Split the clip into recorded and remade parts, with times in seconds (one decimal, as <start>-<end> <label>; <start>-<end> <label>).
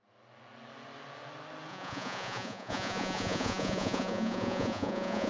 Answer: 0.0-1.7 recorded; 1.7-5.3 remade